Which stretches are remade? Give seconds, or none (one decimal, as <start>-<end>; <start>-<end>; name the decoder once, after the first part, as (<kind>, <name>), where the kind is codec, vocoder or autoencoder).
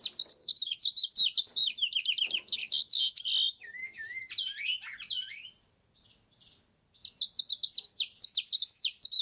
0.4-1.1 (autoencoder, DAC-VAE); 1.6-4.2